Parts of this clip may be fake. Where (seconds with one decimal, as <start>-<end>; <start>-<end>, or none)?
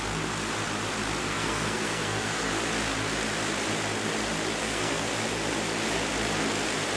1.2-2.5; 4.6-5.1